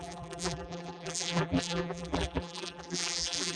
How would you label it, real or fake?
fake